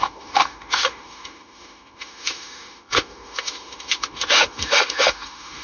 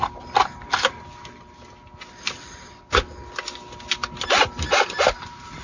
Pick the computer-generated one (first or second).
first